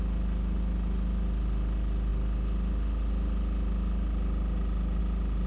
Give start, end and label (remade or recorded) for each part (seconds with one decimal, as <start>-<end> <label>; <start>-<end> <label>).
0.0-5.5 recorded